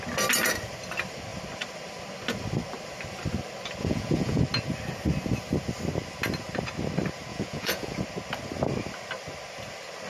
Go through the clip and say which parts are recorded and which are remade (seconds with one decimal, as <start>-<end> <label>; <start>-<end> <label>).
0.0-3.8 recorded; 3.8-4.4 remade; 4.4-7.3 recorded; 7.3-8.0 remade; 8.0-10.1 recorded